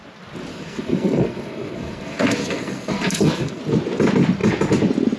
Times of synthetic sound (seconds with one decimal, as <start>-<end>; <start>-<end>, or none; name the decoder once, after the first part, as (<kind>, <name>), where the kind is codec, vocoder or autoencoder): 0.5-3.6 (codec, SNAC)